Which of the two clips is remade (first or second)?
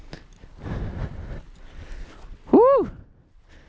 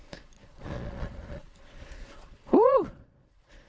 second